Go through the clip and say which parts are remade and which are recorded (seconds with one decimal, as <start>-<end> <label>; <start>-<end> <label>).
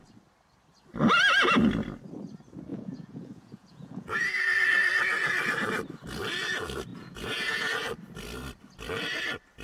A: 0.0-2.7 recorded; 2.7-4.4 remade; 4.4-6.9 recorded; 6.9-7.7 remade; 7.7-9.6 recorded